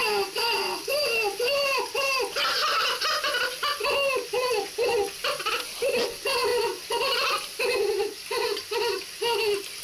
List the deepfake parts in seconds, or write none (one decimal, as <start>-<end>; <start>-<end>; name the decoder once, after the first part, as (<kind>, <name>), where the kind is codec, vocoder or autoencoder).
none